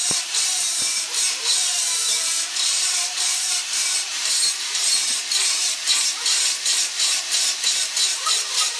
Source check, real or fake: fake